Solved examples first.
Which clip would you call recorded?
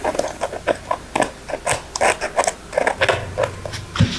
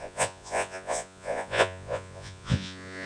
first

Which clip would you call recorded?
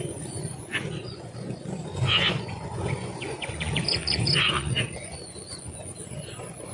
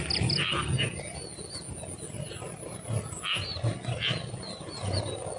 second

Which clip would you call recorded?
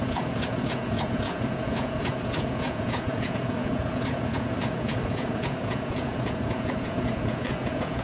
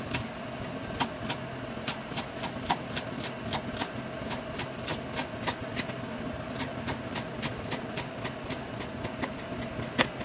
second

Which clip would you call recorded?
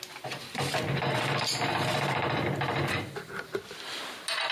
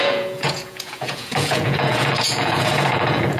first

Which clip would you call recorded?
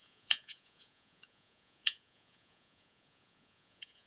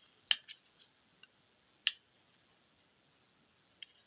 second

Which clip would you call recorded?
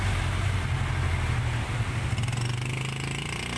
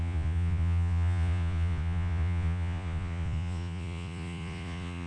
first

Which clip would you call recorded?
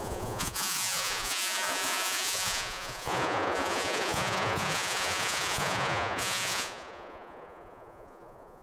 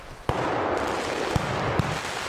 second